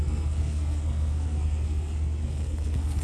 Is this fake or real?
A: fake